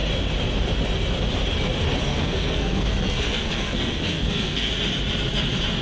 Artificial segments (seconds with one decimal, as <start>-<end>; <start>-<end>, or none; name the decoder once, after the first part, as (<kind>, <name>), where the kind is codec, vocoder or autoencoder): 2.1-4.7 (codec, SNAC)